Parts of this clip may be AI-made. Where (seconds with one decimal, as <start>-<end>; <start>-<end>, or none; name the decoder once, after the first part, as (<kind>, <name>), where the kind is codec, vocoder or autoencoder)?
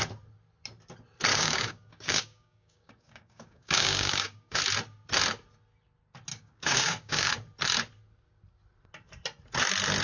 1.3-4.6 (codec, DAC); 6.3-7.3